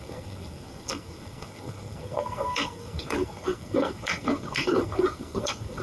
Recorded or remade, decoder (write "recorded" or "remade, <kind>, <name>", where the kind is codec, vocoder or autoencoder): remade, codec, SNAC